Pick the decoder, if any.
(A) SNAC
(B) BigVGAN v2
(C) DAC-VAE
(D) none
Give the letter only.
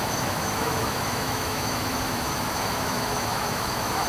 C